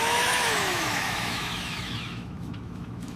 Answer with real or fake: fake